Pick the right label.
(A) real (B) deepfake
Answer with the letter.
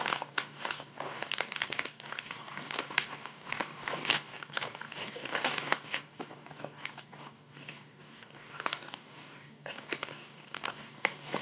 B